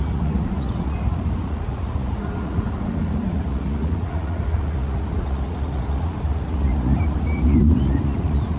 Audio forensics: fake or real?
fake